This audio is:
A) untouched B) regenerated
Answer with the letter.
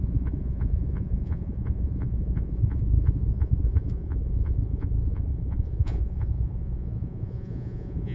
B